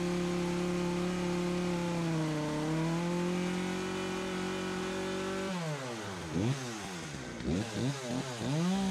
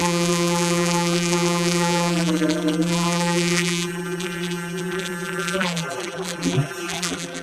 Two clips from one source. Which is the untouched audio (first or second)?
first